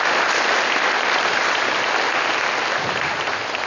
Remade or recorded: recorded